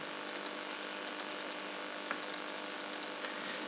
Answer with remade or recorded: recorded